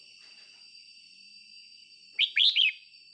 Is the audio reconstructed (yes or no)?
no